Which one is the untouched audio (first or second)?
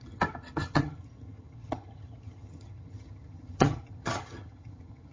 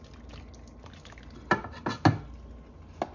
second